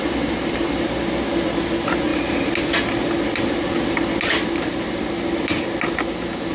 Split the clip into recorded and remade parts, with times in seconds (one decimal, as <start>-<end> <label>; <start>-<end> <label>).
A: 0.0-0.6 remade; 0.6-6.5 recorded